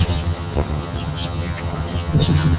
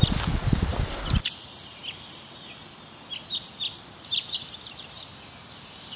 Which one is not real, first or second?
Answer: first